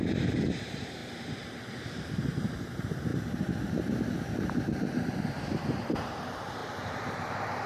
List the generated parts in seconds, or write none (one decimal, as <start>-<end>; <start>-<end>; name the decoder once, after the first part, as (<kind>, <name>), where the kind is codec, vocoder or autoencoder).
0.0-7.7 (vocoder, BigVGAN v2)

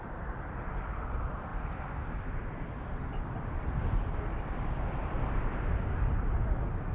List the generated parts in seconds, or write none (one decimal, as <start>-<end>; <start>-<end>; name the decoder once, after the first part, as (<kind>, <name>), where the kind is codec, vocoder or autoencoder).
0.0-6.9 (vocoder, BigVGAN v2)

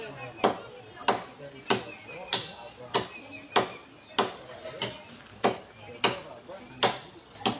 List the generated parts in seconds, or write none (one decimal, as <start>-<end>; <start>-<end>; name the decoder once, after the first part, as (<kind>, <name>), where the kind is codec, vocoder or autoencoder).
none

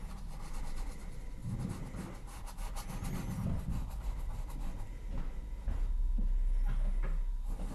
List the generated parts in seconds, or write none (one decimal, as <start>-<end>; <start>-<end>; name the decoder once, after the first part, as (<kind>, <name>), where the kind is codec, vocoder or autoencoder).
none

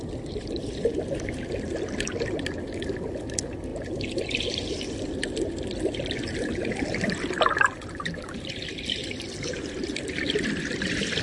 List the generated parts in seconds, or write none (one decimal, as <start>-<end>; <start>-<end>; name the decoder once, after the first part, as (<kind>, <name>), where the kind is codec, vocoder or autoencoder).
0.0-3.7 (vocoder, BigVGAN v2); 4.4-11.2

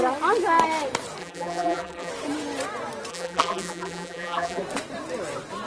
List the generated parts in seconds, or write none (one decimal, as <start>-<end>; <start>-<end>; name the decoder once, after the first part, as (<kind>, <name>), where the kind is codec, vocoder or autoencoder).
1.2-2.1 (vocoder, BigVGAN v2); 3.1-4.6

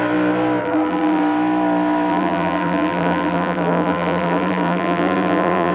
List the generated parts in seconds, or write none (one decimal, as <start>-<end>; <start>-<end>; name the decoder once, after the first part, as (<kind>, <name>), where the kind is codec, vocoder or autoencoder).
0.6-1.2 (vocoder, BigVGAN v2); 2.1-5.7

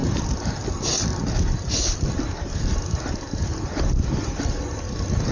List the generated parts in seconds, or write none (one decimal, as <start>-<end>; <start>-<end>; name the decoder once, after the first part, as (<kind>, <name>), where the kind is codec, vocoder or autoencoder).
none